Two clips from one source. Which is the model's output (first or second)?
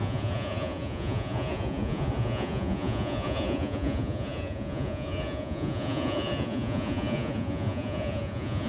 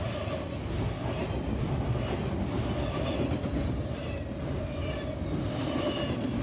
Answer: first